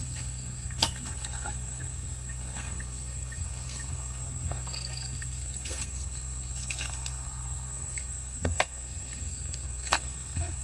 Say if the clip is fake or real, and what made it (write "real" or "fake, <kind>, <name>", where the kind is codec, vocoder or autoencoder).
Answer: fake, codec, SNAC